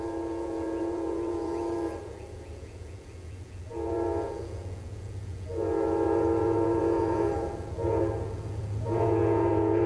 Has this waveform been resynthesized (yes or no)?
yes